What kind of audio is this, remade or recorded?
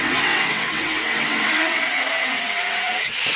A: remade